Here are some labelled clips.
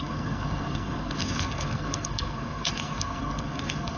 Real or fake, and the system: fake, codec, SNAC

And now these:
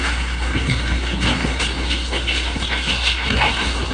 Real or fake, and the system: fake, codec, SNAC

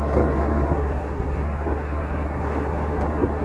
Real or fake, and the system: fake, codec, SNAC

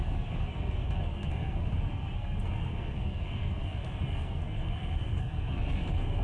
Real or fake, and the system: fake, codec, SNAC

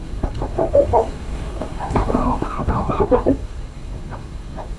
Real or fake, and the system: fake, codec, SNAC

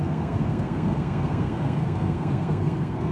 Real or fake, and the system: fake, codec, SNAC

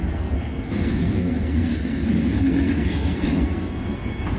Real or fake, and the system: fake, codec, SNAC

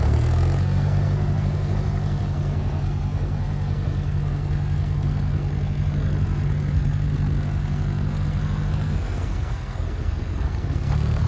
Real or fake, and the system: fake, codec, SNAC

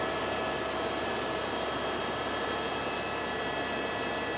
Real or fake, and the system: real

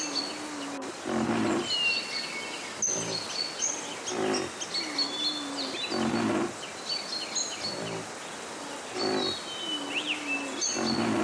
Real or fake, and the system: real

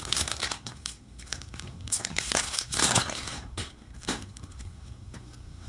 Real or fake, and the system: fake, codec, SNAC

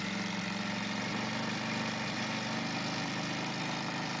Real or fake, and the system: real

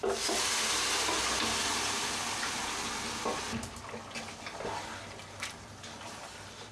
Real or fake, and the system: real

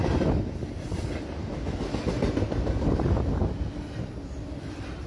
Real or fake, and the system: real